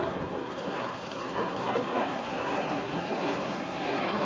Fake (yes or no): yes